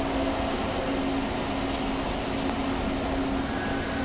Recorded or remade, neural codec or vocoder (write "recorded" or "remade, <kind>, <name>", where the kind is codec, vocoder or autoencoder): recorded